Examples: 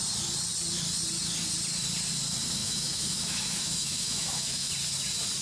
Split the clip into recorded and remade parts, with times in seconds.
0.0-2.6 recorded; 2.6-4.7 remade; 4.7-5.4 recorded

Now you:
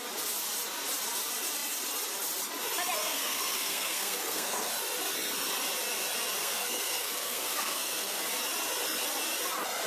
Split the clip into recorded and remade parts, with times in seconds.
0.0-3.0 recorded; 3.0-4.7 remade; 4.7-6.4 recorded; 6.4-8.2 remade; 8.2-9.9 recorded